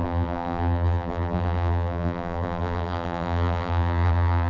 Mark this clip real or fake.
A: fake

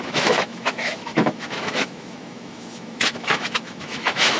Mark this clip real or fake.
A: fake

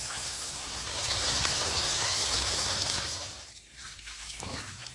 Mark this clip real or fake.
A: fake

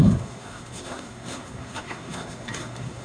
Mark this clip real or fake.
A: fake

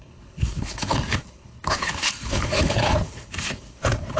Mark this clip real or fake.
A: fake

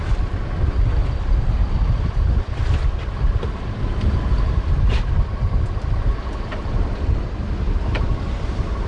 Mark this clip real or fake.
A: fake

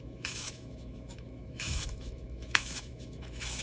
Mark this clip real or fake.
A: fake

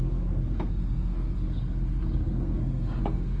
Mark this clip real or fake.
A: fake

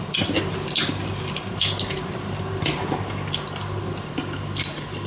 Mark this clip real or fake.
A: real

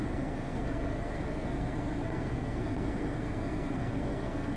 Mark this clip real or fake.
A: fake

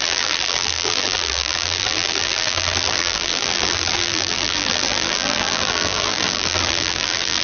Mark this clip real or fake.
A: fake